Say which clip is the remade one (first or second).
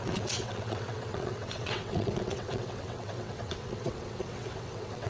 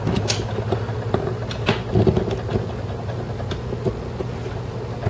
first